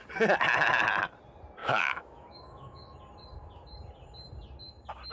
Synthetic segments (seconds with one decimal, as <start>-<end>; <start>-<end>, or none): 1.6-3.0